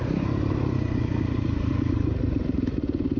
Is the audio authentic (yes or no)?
no